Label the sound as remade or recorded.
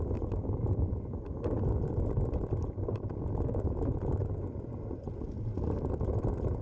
recorded